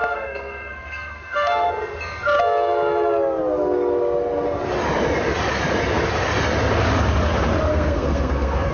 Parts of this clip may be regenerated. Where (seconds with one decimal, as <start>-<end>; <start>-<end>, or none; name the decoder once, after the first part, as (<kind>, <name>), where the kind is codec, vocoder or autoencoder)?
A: 0.0-1.7 (codec, SNAC); 7.7-8.7